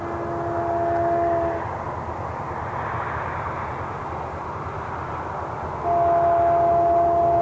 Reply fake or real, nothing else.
real